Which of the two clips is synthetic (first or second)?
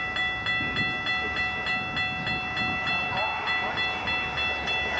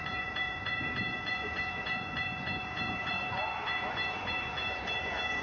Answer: second